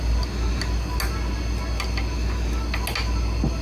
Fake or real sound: real